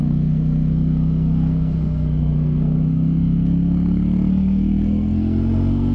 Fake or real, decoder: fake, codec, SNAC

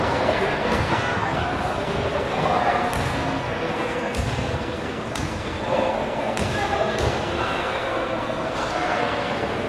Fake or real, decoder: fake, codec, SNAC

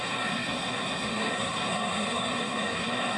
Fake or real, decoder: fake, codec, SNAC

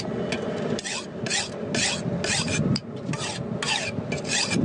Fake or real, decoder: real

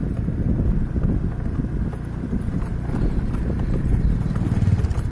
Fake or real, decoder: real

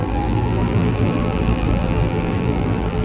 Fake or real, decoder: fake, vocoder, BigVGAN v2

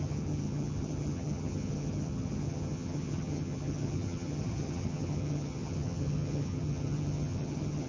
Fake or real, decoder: fake, vocoder, HiFi-GAN